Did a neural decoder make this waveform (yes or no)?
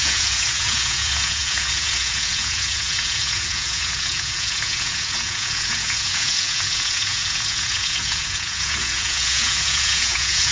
yes